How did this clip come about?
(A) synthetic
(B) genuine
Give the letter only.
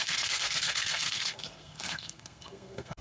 A